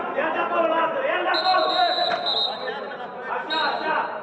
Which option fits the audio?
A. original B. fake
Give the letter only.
A